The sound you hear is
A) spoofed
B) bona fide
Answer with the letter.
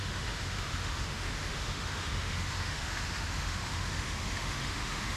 A